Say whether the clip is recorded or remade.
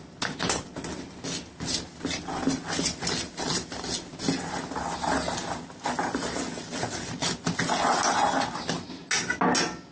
recorded